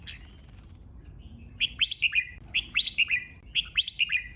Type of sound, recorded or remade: remade